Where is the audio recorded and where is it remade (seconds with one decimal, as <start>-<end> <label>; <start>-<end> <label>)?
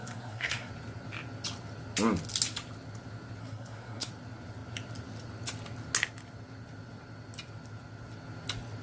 0.0-0.7 remade; 0.7-3.4 recorded; 3.4-4.1 remade; 4.1-8.8 recorded